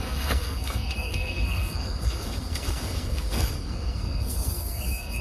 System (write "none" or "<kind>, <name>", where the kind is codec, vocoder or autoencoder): codec, SNAC